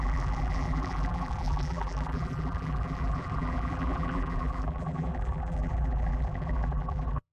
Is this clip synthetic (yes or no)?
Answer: yes